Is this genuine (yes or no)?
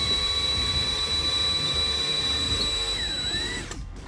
no